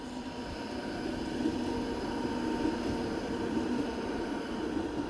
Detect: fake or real real